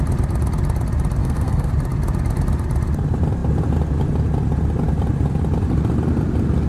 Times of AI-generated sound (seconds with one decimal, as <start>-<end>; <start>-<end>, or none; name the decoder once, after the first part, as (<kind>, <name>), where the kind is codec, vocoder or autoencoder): 1.2-1.7 (codec, SNAC)